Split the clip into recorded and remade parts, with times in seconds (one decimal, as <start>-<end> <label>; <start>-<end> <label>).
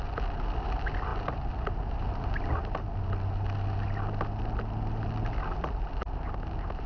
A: 0.0-6.9 recorded